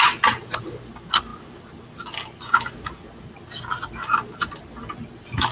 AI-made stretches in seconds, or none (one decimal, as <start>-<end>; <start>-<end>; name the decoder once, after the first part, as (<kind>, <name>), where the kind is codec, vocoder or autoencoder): none